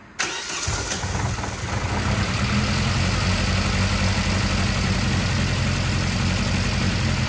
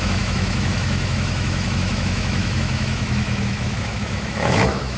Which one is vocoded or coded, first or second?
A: second